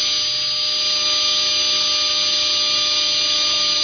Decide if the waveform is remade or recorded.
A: recorded